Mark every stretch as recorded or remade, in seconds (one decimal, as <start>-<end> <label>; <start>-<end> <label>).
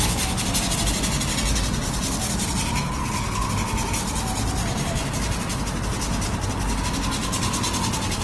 0.0-3.0 recorded; 3.0-3.5 remade; 3.5-8.2 recorded